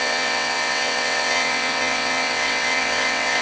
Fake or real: fake